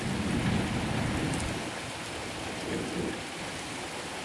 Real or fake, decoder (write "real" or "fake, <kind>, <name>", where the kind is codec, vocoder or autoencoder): real